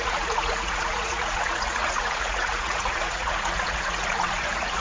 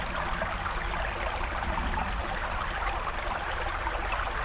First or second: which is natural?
second